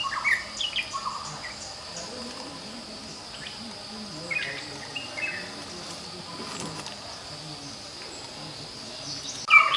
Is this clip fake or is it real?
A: real